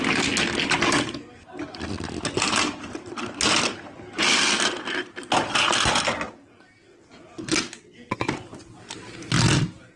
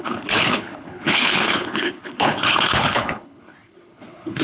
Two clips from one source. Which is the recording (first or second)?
first